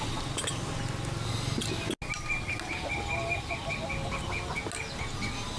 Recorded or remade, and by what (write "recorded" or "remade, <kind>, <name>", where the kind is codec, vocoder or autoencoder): recorded